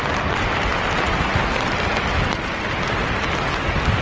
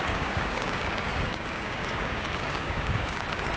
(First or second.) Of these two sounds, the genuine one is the first